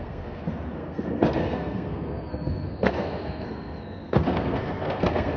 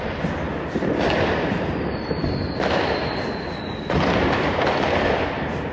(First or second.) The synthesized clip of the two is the first